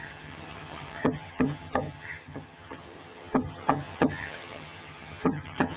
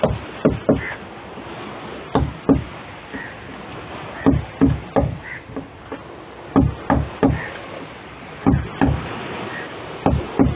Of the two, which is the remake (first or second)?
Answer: first